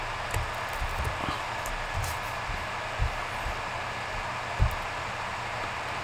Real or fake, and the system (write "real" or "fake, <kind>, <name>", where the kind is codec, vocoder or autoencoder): real